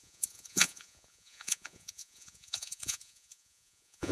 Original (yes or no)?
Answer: no